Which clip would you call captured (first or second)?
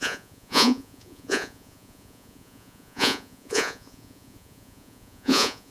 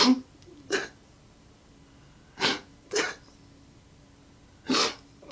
second